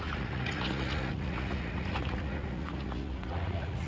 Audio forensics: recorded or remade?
remade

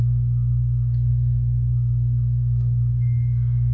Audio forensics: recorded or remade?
remade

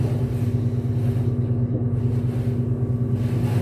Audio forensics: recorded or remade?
recorded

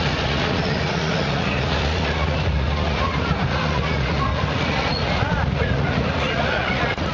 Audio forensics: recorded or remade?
remade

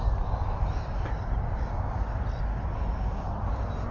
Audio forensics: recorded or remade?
recorded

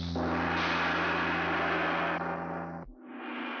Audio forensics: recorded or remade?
recorded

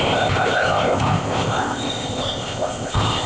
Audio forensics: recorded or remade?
remade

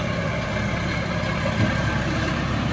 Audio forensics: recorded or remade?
remade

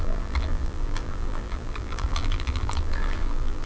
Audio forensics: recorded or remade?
remade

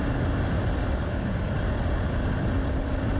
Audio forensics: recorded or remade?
remade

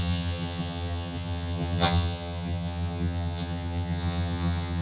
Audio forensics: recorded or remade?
remade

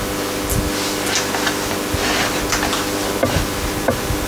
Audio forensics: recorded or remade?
recorded